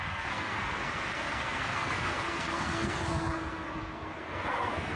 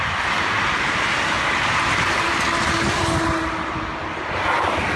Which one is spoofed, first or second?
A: first